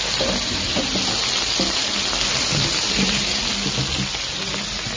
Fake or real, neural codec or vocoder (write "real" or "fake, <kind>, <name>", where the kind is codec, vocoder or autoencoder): real